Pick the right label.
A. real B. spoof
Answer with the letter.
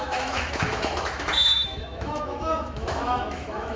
B